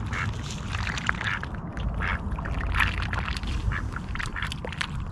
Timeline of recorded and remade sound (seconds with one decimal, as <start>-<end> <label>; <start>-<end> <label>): 0.0-5.1 recorded